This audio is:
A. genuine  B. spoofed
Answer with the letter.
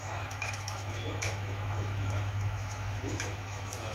B